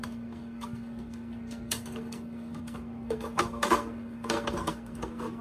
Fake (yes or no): yes